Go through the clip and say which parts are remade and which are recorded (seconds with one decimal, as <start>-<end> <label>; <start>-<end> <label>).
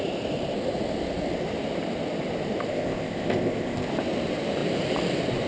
0.0-2.7 recorded; 2.7-3.9 remade; 3.9-5.5 recorded